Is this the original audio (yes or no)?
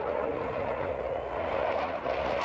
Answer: no